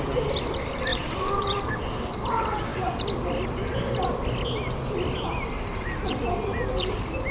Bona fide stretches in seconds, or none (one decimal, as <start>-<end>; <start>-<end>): 0.0-0.9; 1.6-7.3